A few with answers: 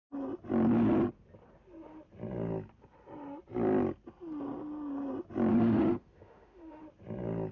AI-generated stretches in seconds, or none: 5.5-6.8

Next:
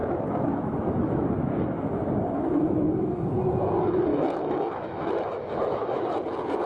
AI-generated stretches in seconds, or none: 0.0-3.2; 4.1-6.0

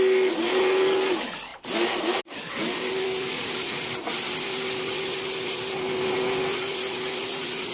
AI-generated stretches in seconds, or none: none

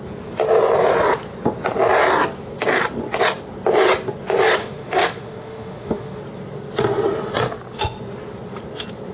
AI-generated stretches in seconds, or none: 4.6-6.2